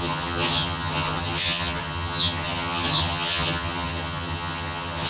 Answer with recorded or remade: remade